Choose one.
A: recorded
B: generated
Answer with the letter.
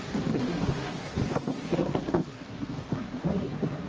B